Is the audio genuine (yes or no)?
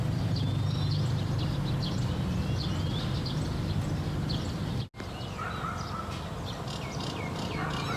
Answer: yes